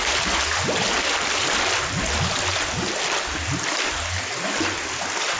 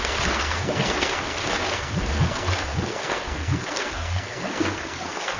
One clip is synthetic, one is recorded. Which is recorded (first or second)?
first